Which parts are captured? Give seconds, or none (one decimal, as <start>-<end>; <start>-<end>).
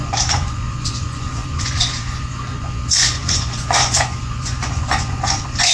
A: none